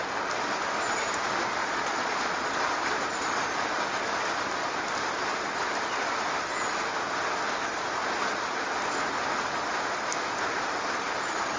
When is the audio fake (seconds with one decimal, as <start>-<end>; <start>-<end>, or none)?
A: 1.6-2.5